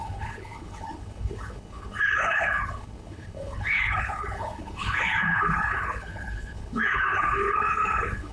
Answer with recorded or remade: remade